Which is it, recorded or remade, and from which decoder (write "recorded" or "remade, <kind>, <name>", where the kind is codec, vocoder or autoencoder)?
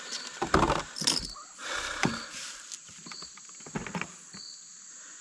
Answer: recorded